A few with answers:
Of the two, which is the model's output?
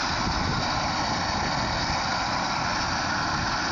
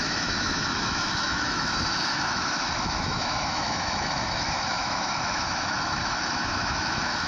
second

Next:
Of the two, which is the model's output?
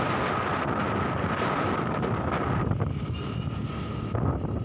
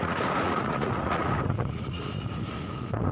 second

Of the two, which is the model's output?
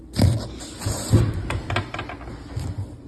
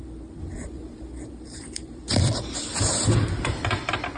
second